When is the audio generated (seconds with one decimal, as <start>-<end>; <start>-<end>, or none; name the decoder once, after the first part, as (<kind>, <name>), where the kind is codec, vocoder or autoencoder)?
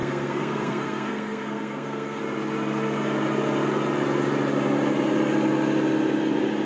0.0-2.2 (codec, SNAC)